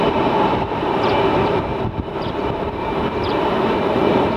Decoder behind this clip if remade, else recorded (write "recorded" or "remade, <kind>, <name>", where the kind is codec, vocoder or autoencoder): remade, vocoder, BigVGAN v2